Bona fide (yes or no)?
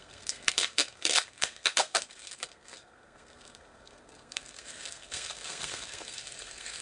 no